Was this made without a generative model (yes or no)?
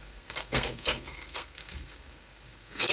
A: no